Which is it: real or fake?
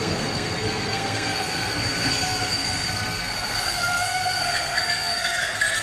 fake